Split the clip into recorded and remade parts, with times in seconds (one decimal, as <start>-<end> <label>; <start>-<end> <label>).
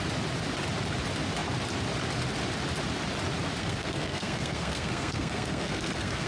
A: 0.0-3.6 recorded; 3.6-6.3 remade